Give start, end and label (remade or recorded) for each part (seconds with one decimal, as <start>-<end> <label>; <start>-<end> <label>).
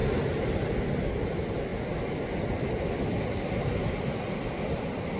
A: 0.0-5.2 recorded